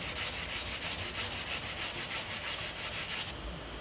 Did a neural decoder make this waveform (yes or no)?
no